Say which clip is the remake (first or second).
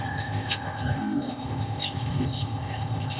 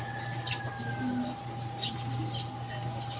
first